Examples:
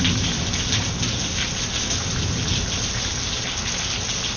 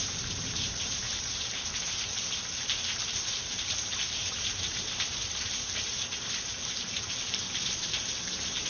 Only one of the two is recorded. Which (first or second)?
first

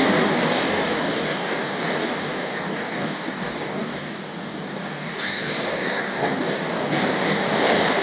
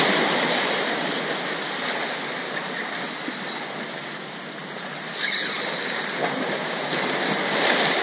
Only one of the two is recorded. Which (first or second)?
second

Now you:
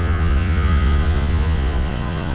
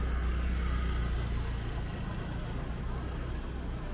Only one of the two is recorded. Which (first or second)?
second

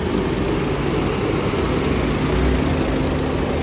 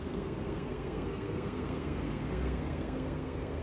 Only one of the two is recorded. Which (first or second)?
first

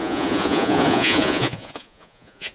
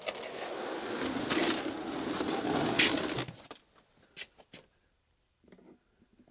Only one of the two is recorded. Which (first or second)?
second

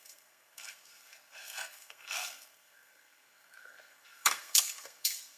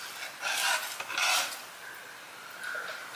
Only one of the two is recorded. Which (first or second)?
second